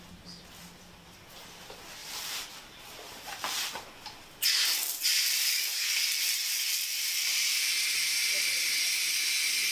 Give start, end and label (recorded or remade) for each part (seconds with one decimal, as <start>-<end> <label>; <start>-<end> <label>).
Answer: 0.0-2.0 recorded; 2.0-3.8 remade; 3.8-5.1 recorded; 5.1-8.4 remade; 8.4-9.7 recorded